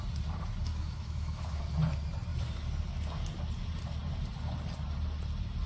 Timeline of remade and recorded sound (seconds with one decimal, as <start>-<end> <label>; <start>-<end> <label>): 0.0-0.7 recorded; 0.7-1.6 remade; 1.6-5.7 recorded